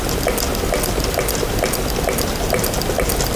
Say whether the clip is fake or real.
real